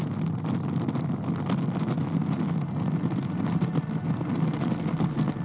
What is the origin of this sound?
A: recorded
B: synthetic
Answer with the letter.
A